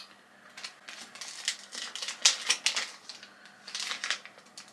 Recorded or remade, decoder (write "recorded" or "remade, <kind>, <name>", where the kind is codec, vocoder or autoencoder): recorded